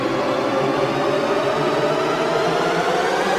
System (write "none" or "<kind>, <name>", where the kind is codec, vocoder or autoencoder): none